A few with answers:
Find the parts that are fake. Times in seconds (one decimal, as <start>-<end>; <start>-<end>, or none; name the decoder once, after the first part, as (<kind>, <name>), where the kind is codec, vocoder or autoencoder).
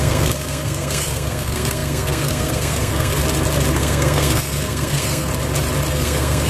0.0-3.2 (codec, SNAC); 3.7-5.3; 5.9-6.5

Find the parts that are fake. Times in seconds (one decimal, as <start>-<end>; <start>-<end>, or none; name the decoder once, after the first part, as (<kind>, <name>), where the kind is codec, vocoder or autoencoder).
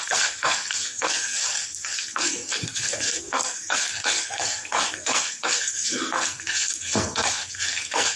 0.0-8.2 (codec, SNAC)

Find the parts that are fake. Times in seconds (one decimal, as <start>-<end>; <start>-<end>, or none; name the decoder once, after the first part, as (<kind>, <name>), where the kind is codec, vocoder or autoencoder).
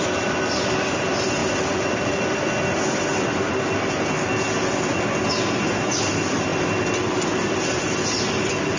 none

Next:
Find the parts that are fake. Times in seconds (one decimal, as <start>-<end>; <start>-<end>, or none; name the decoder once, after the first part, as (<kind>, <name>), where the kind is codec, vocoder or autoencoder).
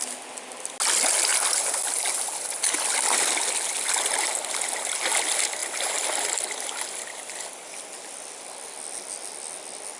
none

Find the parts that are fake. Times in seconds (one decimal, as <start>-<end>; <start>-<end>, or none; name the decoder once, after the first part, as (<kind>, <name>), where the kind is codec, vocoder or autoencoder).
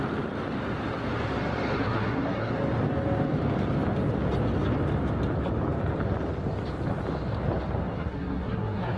1.8-2.5 (codec, SNAC); 7.9-9.0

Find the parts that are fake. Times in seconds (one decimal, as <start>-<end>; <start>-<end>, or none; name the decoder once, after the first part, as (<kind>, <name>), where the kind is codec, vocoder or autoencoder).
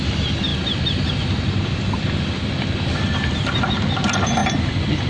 none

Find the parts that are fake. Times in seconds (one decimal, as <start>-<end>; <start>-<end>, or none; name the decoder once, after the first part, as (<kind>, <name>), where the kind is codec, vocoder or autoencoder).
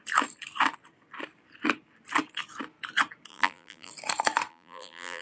3.3-3.9 (vocoder, BigVGAN v2); 4.5-5.2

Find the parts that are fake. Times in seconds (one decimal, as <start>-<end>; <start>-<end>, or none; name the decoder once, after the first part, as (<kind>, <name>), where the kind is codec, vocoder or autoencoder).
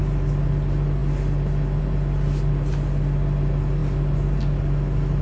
none